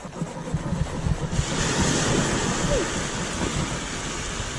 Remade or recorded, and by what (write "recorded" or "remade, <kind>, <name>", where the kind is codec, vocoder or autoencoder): recorded